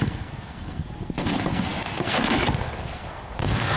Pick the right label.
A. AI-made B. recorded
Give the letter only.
A